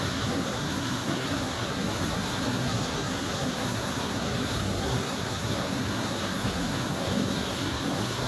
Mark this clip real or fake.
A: fake